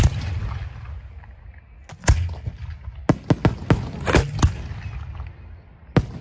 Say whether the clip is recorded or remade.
recorded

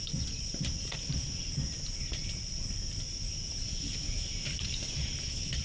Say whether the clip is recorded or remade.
recorded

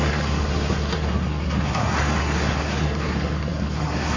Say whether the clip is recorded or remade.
remade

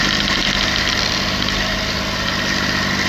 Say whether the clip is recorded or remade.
recorded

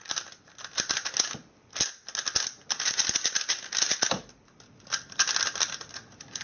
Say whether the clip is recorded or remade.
recorded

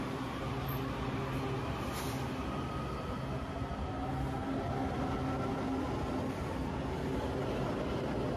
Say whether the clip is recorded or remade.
recorded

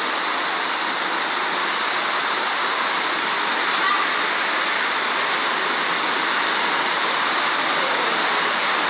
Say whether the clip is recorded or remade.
recorded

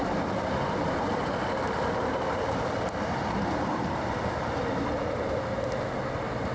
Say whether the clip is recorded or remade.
recorded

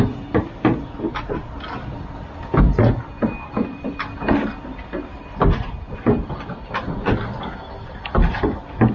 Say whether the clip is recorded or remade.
recorded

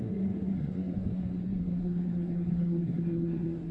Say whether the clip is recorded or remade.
remade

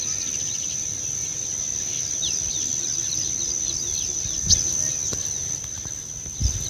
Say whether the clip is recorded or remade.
recorded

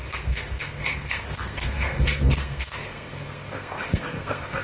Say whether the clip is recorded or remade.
remade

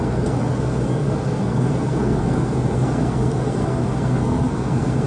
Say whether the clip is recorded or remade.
remade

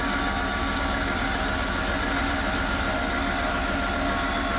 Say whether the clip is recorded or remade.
recorded